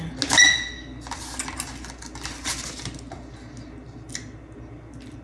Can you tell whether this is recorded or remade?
recorded